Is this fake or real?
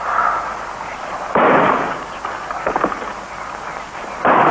real